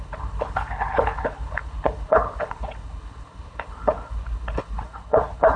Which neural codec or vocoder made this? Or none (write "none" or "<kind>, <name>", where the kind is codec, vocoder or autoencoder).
codec, HILCodec